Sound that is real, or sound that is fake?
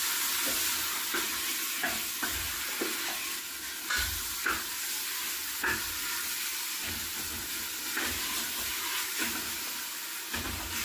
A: real